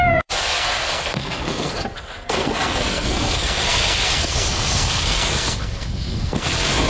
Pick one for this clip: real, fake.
fake